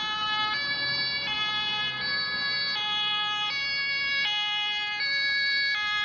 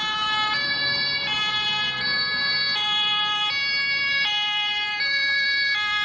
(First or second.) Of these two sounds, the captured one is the first